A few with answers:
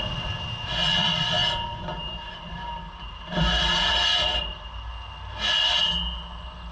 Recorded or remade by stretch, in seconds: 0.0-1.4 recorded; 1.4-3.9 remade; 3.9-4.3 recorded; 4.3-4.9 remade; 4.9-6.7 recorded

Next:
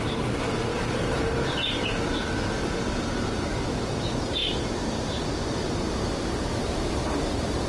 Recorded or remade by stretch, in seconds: 0.0-0.7 remade; 0.7-2.0 recorded; 2.0-7.7 remade

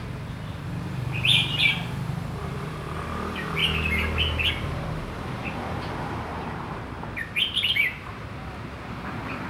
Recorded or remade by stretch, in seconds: 0.0-3.6 remade; 3.6-4.5 recorded; 4.5-9.5 remade

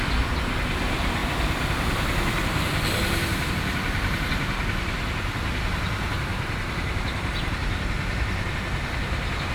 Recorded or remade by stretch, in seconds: 0.0-6.3 recorded; 6.3-8.6 remade; 8.6-9.5 recorded

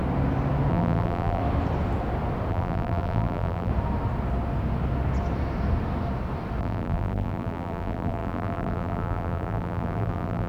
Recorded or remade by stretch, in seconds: 0.0-0.7 recorded; 0.7-1.4 remade; 1.4-2.5 recorded; 2.5-3.7 remade; 3.7-6.6 recorded; 6.6-10.5 remade

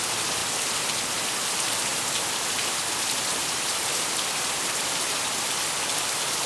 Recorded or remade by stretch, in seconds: 0.0-1.9 recorded; 1.9-5.8 remade; 5.8-6.5 recorded

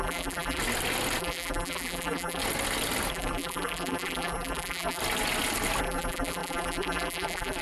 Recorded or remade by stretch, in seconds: 0.0-0.6 remade; 0.6-1.2 recorded; 1.2-2.4 remade; 2.4-3.1 recorded; 3.1-5.0 remade; 5.0-5.8 recorded; 5.8-7.6 remade

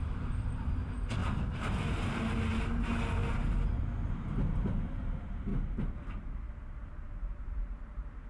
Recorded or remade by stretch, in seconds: 0.0-3.2 remade; 3.2-3.8 recorded; 3.8-8.3 remade